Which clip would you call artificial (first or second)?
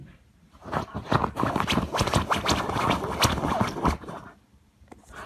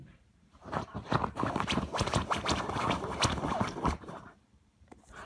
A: second